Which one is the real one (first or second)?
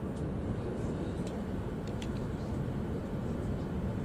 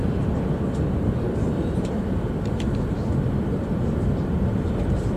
first